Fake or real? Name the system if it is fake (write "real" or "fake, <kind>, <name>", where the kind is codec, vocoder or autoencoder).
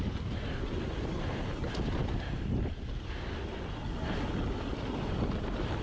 real